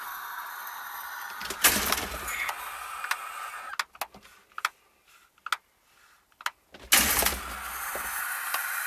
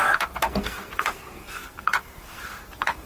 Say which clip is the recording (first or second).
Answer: first